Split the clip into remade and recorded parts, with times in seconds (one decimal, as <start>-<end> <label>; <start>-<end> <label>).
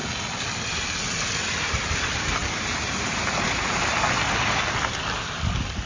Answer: 0.0-2.4 remade; 2.4-3.3 recorded; 3.3-3.9 remade; 3.9-5.2 recorded; 5.2-5.9 remade